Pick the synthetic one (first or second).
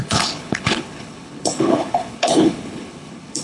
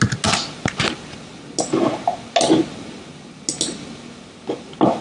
first